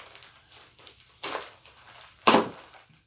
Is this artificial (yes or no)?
no